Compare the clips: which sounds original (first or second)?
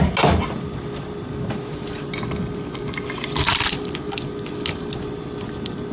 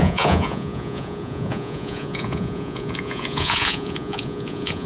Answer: first